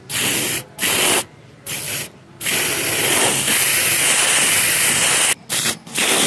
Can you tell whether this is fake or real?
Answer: real